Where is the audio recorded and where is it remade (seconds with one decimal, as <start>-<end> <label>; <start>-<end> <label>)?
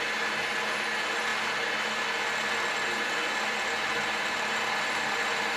0.0-5.6 recorded